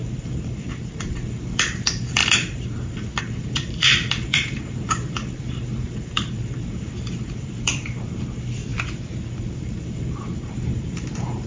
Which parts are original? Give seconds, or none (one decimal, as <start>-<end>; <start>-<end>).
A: none